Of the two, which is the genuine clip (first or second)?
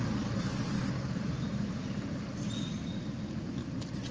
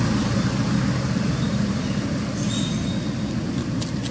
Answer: second